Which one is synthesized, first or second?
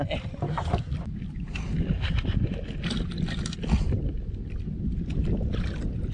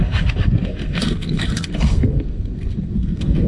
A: second